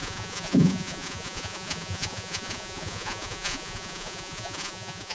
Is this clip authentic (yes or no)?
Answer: no